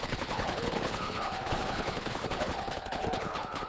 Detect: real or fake fake